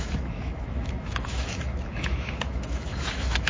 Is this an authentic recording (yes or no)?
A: no